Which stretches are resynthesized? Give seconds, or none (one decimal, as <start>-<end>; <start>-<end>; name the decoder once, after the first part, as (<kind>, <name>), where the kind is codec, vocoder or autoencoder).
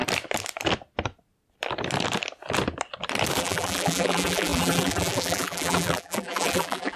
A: 3.4-7.0 (vocoder, BigVGAN v2)